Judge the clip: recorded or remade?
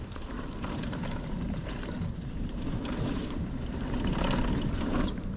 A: remade